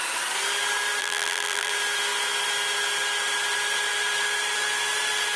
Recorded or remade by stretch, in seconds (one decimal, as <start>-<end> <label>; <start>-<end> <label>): 0.0-1.0 recorded; 1.0-1.7 remade; 1.7-5.4 recorded